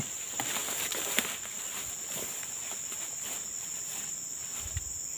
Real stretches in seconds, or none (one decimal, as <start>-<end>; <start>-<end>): 0.0-0.6; 1.3-5.2